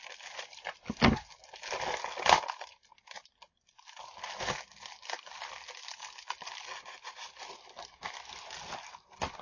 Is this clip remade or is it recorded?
recorded